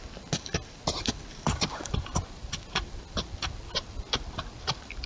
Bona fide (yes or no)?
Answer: yes